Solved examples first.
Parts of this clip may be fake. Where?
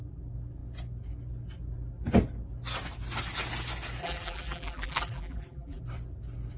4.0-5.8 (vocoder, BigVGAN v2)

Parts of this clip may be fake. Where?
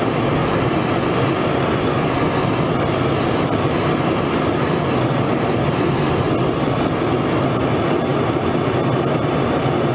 0.4-5.2 (vocoder, BigVGAN v2); 8.1-8.8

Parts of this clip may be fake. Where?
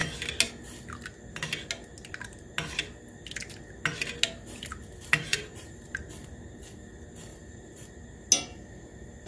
5.3-6.0 (vocoder, BigVGAN v2); 7.3-7.9